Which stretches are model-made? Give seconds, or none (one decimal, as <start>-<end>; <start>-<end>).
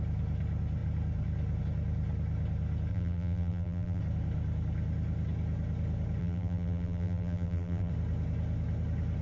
2.9-4.0; 6.2-7.9